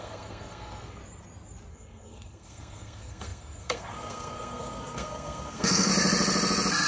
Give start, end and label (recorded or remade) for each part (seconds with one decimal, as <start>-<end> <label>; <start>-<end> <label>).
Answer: 0.0-1.0 remade; 1.0-1.7 recorded; 1.7-5.9 remade; 5.9-6.9 recorded